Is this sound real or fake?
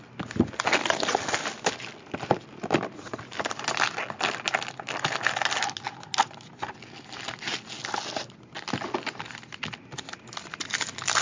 real